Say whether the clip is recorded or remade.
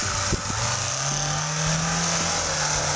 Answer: recorded